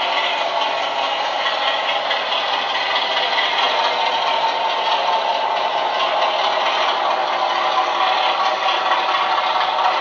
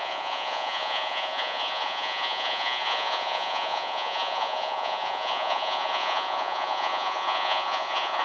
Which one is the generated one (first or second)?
second